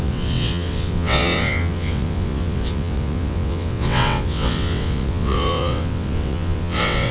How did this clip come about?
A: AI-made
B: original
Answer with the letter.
A